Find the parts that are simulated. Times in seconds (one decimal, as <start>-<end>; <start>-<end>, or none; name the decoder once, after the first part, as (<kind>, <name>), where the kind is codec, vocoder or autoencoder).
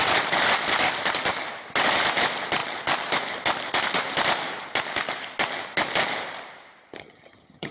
7.0-7.7 (vocoder, HiFi-GAN)